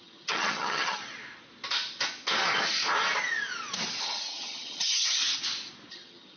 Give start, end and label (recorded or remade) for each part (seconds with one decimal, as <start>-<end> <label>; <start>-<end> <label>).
0.0-1.0 remade; 1.0-4.0 recorded; 4.0-5.2 remade; 5.2-5.9 recorded; 5.9-6.4 remade